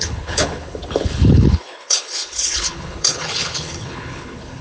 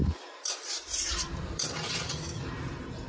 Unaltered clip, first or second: second